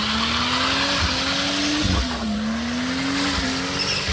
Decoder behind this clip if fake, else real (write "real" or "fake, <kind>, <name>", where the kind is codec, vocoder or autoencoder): real